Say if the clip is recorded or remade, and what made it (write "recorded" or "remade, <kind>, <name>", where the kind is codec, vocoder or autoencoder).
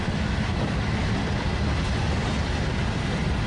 recorded